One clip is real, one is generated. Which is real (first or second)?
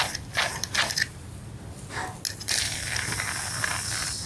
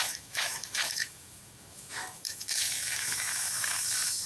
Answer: first